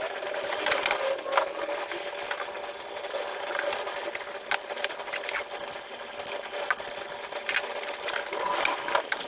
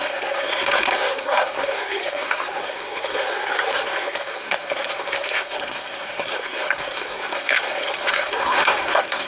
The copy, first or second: second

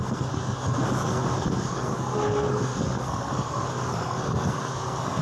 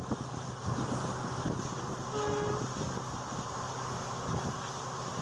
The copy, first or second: first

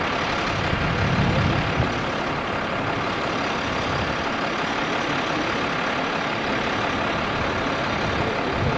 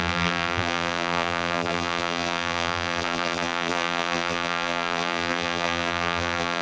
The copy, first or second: second